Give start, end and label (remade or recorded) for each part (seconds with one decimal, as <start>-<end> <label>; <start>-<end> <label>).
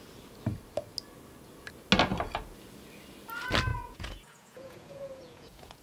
0.0-3.7 recorded; 3.7-5.8 remade